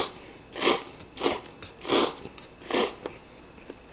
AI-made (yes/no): no